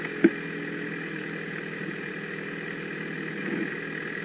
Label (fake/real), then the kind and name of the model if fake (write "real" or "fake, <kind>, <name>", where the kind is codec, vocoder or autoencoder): real